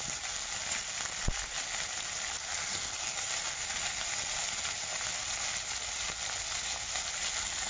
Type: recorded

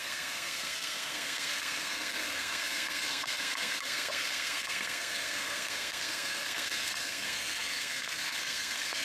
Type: remade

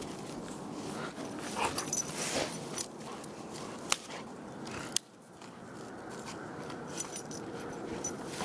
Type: recorded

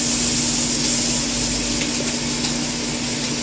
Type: recorded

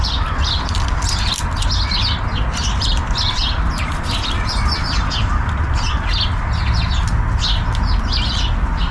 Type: recorded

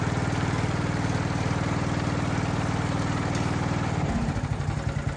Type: recorded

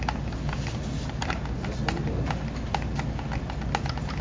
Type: recorded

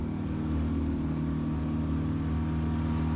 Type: recorded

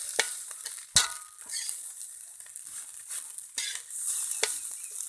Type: recorded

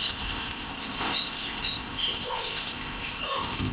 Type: remade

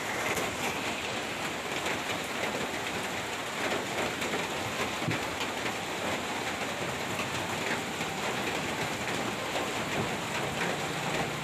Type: recorded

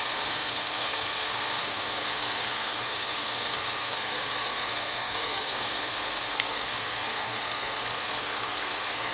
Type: remade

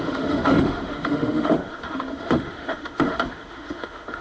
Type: remade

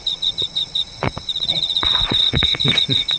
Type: remade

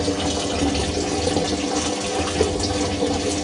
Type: recorded